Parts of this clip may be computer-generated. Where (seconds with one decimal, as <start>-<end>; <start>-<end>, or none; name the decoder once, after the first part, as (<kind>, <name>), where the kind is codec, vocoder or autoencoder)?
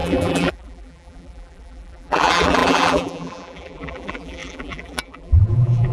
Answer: 0.0-5.9 (vocoder, BigVGAN v2)